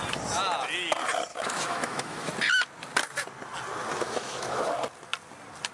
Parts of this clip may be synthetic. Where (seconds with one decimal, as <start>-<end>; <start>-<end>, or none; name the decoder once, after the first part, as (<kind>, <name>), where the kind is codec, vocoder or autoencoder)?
1.3-2.3 (autoencoder, DAC-VAE); 3.9-4.6